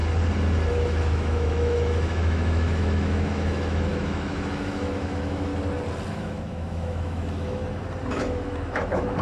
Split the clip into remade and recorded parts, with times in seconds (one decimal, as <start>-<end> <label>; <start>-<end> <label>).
0.0-0.7 recorded; 0.7-5.5 remade; 5.5-6.1 recorded; 6.1-7.6 remade; 7.6-8.1 recorded; 8.1-9.2 remade